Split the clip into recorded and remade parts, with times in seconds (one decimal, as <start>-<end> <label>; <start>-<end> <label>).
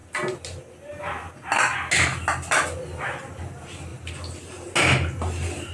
0.0-5.7 recorded